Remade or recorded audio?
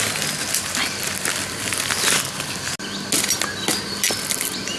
recorded